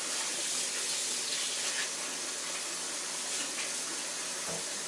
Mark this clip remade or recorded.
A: recorded